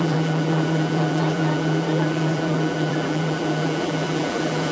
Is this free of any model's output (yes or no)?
no